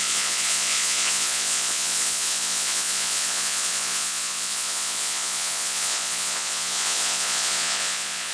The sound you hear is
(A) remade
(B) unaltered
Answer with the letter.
A